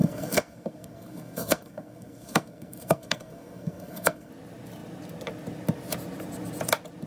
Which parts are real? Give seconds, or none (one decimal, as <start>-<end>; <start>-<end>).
4.3-7.1